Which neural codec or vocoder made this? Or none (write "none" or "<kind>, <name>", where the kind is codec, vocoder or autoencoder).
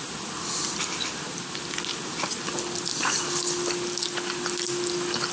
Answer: none